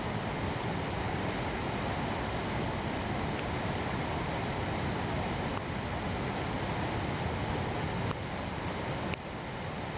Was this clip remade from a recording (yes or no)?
no